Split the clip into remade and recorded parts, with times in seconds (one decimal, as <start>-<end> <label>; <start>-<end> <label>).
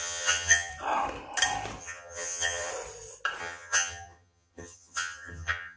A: 0.0-0.7 remade; 0.7-1.8 recorded; 1.8-2.7 remade; 2.7-3.4 recorded; 3.4-5.8 remade